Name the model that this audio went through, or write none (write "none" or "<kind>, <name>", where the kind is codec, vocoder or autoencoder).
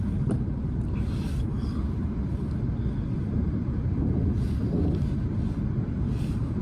none